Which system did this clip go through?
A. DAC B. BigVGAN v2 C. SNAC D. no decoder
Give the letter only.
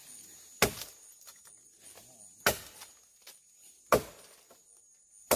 D